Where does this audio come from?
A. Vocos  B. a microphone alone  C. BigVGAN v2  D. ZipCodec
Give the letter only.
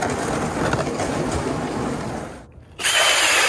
B